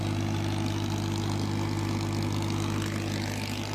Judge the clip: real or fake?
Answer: real